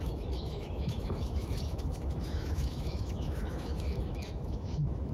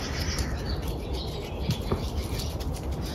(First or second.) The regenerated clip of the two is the first